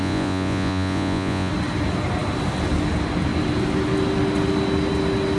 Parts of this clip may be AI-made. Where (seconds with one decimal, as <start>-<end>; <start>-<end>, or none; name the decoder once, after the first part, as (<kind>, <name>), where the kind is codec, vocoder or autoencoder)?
0.0-1.5 (vocoder, Vocos)